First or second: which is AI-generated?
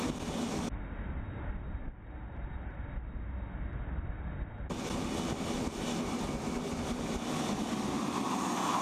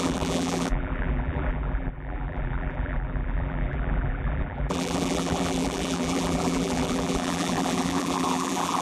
second